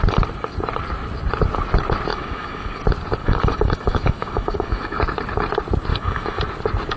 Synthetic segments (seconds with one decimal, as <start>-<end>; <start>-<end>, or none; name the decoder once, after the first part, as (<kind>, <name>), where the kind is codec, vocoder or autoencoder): 2.1-2.8 (autoencoder, DAC-VAE); 3.2-5.0; 5.9-6.4